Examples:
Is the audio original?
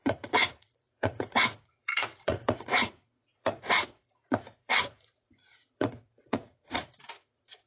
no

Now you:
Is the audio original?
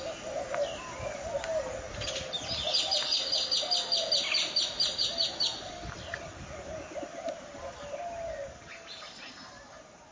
yes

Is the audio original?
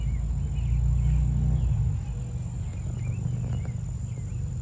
yes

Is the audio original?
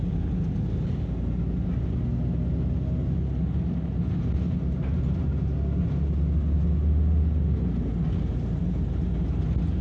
yes